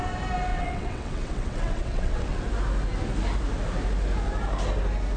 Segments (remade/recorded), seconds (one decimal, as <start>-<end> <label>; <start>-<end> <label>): 0.0-0.5 recorded; 0.5-2.5 remade; 2.5-5.2 recorded